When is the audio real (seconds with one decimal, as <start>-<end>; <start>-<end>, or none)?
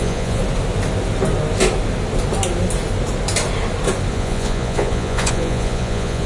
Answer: 0.4-4.1